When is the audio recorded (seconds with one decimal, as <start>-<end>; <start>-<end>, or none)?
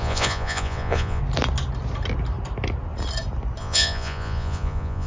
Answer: 1.2-3.6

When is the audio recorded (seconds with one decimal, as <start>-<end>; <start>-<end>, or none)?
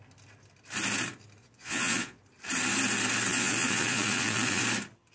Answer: 0.0-1.4; 2.2-3.3; 4.6-5.1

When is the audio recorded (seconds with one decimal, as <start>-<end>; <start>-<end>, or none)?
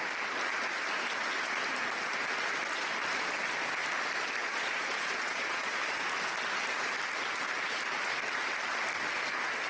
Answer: 0.0-4.4; 5.8-9.7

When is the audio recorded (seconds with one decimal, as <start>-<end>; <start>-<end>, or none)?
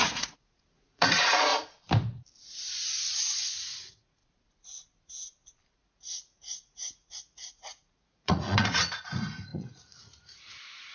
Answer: 1.5-3.4; 4.2-5.7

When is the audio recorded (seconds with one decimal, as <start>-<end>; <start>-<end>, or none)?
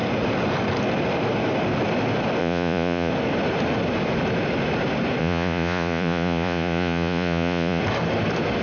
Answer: 0.0-2.4; 3.1-5.2; 7.8-8.6